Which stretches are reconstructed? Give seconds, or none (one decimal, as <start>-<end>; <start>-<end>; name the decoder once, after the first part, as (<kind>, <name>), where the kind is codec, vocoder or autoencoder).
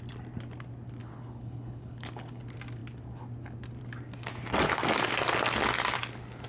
1.0-2.4 (codec, HILCodec)